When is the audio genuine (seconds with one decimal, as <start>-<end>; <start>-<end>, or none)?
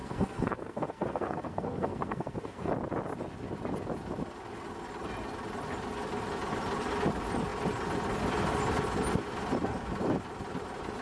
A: 2.7-11.0